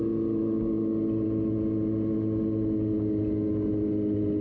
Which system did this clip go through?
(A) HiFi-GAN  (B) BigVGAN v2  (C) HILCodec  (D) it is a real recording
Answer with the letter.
D